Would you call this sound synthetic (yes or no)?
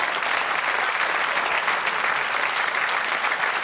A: no